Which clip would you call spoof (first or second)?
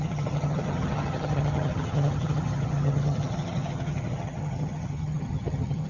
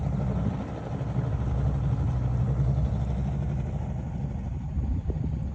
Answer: first